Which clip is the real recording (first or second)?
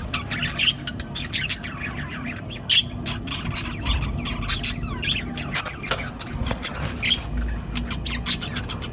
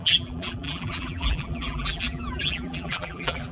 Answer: first